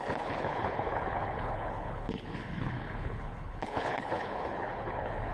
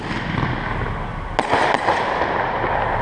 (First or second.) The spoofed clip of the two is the first